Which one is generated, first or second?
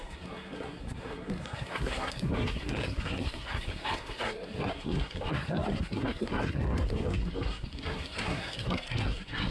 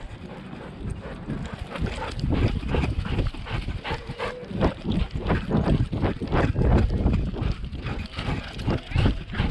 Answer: first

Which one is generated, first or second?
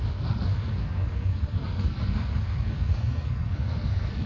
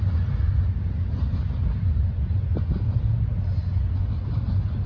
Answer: first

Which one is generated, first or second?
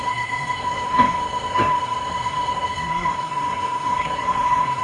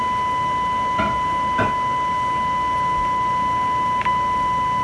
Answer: first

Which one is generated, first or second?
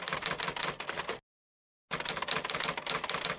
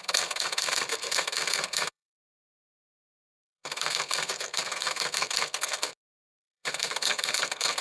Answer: second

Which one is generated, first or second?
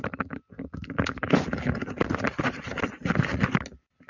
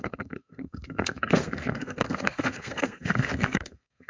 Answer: second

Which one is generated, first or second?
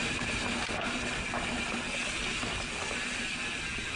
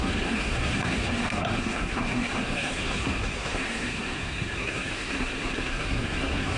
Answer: second